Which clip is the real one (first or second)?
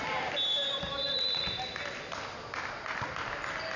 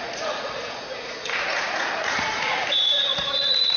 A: first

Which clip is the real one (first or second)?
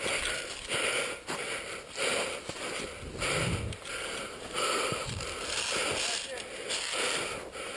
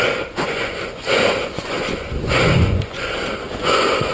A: first